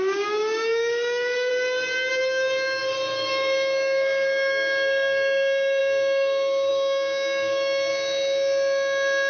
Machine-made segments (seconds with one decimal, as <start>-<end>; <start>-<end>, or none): 0.0-1.5; 2.1-7.9

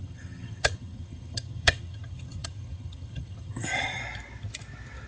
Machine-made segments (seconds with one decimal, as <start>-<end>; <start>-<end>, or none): 0.0-4.0